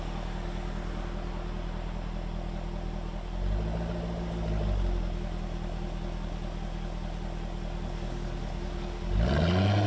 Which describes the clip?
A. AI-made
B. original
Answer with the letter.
B